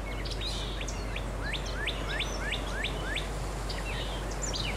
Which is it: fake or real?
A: real